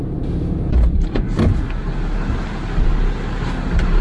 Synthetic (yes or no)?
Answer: no